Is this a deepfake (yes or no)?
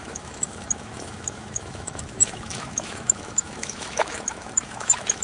yes